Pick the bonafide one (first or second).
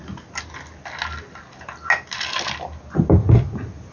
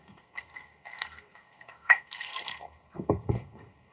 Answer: first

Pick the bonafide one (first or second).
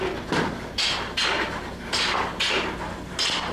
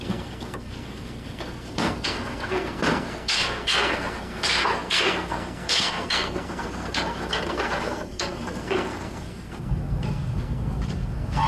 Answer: first